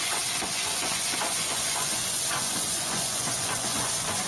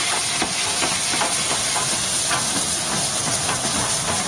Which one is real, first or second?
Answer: second